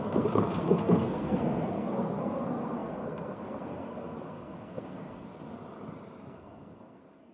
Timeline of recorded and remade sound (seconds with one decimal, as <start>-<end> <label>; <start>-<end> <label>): 0.0-5.3 remade; 5.3-6.2 recorded; 6.2-7.3 remade